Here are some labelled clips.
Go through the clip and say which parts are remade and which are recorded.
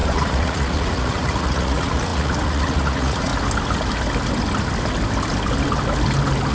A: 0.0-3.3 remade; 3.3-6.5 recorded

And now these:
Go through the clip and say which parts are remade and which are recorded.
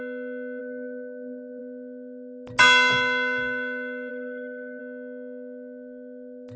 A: 0.0-0.6 recorded; 0.6-1.6 remade; 1.6-4.1 recorded; 4.1-4.8 remade; 4.8-6.6 recorded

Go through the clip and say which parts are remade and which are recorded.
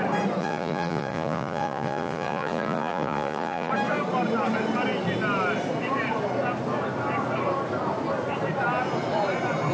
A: 0.0-0.4 recorded; 0.4-3.7 remade; 3.7-9.7 recorded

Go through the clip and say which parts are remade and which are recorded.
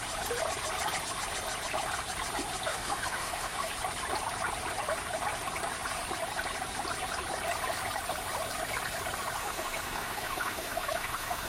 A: 0.0-2.7 recorded; 2.7-3.7 remade; 3.7-9.4 recorded; 9.4-11.5 remade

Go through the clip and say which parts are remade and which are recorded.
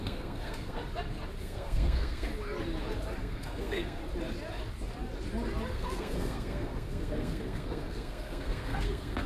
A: 0.0-0.8 remade; 0.8-1.4 recorded; 1.4-2.3 remade; 2.3-3.2 recorded; 3.2-4.0 remade; 4.0-5.7 recorded; 5.7-9.3 remade